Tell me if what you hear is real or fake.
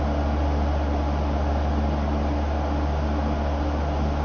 real